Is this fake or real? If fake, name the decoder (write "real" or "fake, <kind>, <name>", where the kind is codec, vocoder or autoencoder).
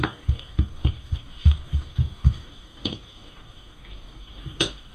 fake, codec, DAC